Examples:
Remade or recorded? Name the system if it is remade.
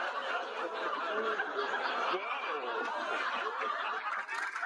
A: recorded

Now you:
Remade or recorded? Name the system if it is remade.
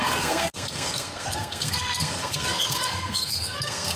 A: remade, codec, SNAC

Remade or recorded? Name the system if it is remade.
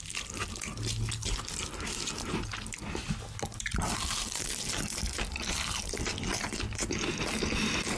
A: recorded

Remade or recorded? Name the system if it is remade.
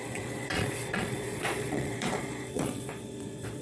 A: remade, vocoder, Vocos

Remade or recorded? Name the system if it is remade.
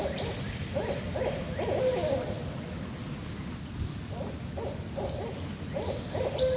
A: recorded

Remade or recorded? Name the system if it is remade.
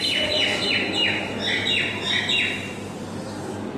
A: recorded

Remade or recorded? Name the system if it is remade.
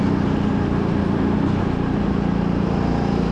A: recorded